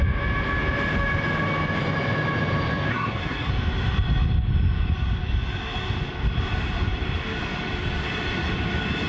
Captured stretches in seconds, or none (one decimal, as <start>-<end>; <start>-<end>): 0.0-2.9; 3.5-9.1